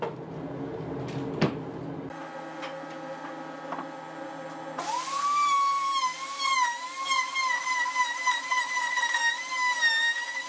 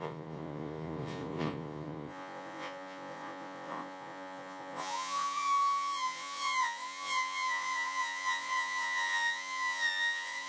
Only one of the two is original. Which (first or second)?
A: first